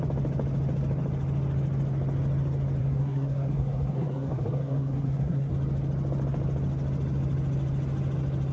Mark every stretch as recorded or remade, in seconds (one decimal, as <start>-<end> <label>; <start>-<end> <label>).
0.0-2.8 recorded; 2.8-5.5 remade; 5.5-8.5 recorded